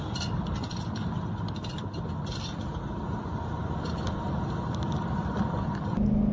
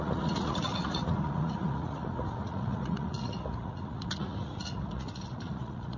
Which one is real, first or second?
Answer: first